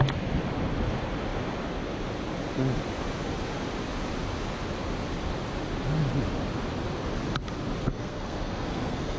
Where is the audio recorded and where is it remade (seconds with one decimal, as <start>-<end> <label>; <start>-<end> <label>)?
0.0-7.8 recorded; 7.8-9.2 remade

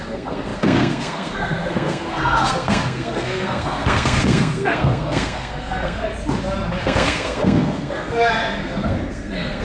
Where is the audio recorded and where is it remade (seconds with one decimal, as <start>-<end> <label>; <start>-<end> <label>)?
0.0-6.1 remade; 6.1-6.8 recorded; 6.8-9.6 remade

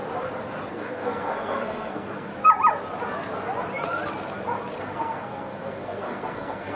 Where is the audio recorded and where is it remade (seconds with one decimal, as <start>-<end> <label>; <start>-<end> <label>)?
0.0-0.7 recorded; 0.7-2.3 remade; 2.3-4.8 recorded; 4.8-6.8 remade

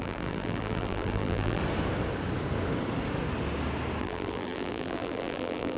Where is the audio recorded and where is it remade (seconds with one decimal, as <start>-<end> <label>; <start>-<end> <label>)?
0.0-1.6 remade; 1.6-4.0 recorded; 4.0-5.8 remade

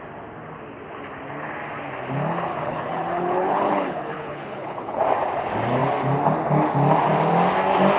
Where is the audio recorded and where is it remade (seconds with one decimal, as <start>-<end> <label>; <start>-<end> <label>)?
0.0-2.5 recorded; 2.5-5.0 remade; 5.0-8.0 recorded

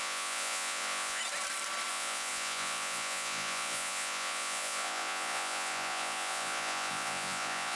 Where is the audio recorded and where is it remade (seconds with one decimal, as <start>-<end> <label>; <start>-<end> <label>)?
0.0-1.2 remade; 1.2-1.9 recorded; 1.9-7.7 remade